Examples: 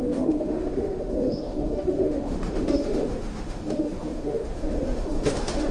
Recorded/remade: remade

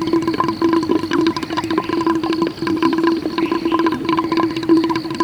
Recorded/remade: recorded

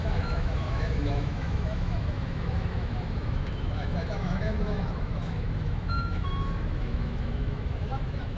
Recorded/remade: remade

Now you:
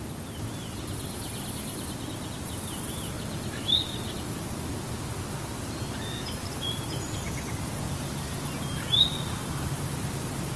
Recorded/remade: recorded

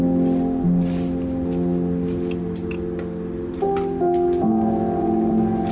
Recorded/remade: recorded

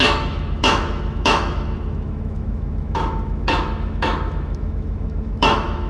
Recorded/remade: remade